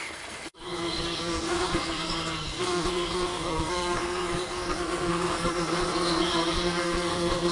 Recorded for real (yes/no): no